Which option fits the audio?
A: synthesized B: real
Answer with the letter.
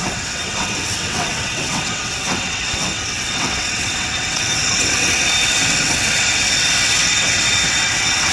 A